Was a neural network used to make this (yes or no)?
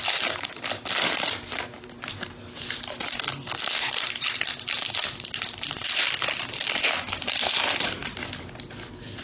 no